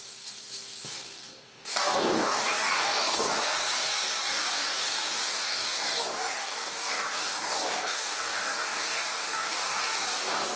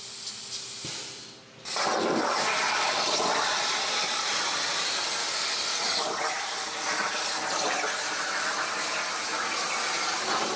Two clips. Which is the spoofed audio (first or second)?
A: first